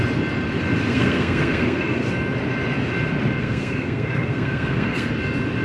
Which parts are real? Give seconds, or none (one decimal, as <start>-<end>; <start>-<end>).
0.0-0.9; 2.1-3.4; 5.1-5.6